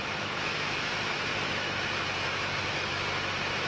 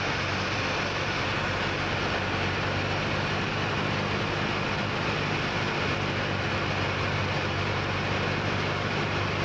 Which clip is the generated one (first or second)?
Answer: first